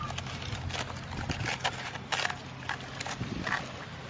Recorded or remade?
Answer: recorded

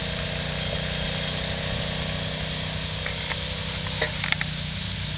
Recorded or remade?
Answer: recorded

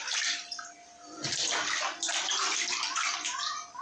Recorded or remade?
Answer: recorded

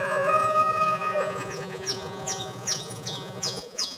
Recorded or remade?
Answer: remade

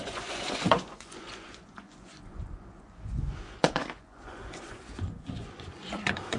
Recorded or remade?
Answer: remade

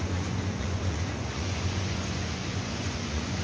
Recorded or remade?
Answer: remade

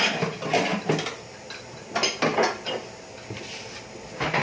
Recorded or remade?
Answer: recorded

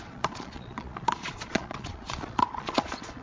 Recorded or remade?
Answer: remade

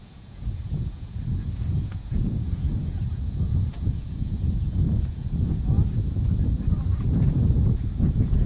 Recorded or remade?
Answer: remade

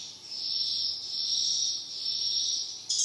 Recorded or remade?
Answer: recorded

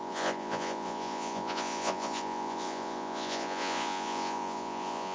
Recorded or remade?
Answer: remade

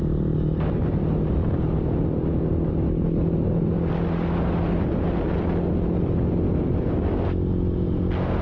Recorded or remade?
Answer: recorded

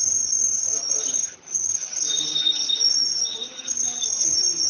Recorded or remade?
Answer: recorded